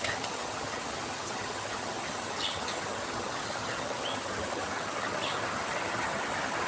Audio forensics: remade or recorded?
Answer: remade